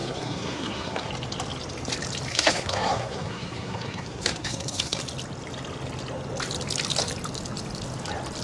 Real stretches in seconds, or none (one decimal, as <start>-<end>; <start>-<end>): 1.1-2.3; 5.0-8.4